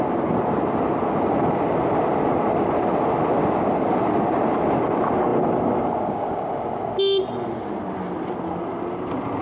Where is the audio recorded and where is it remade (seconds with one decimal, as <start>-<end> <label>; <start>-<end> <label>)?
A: 0.0-9.4 recorded

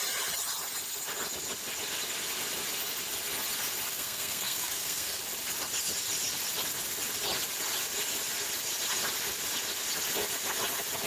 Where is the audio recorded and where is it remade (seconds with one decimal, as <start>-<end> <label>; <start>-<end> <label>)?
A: 0.0-3.9 recorded; 3.9-5.2 remade; 5.2-11.1 recorded

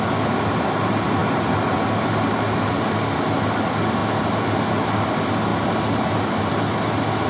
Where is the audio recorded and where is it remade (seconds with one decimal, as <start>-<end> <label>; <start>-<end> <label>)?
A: 0.0-7.3 recorded